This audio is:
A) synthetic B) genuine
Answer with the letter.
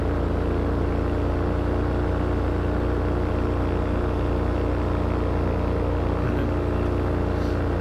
B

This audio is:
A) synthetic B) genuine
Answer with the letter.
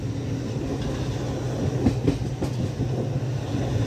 B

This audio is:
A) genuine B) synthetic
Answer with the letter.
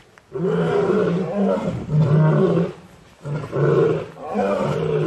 A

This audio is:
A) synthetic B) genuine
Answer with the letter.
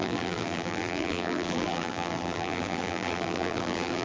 A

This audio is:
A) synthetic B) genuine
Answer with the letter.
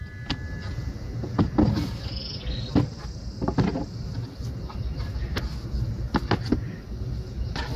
B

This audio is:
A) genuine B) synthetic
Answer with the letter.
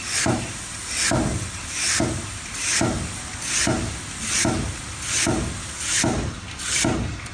A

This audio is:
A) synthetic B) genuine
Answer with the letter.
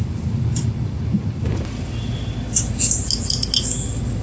B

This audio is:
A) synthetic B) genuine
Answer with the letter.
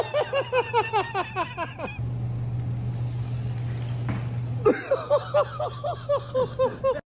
B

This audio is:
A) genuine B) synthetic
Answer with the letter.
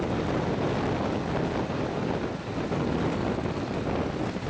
A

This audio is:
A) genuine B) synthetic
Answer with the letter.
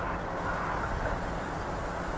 A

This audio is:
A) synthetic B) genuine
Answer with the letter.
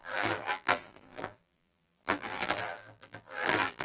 A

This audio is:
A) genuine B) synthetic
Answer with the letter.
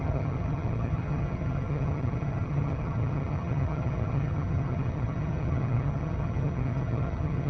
B